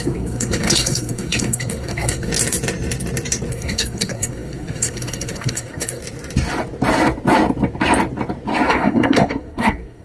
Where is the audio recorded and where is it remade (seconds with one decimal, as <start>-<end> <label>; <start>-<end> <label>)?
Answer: 0.0-2.3 remade; 2.3-3.5 recorded; 3.5-6.0 remade; 6.0-8.7 recorded; 8.7-10.0 remade